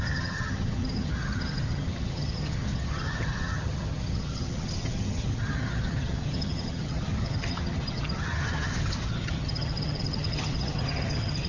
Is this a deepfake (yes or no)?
yes